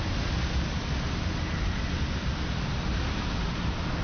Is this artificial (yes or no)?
no